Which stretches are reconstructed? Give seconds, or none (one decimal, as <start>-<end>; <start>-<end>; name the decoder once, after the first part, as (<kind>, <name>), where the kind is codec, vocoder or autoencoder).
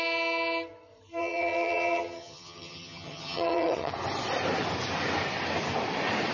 1.2-3.9 (vocoder, HiFi-GAN)